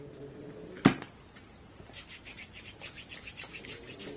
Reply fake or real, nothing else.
real